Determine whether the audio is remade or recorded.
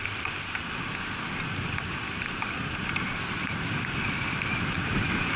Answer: recorded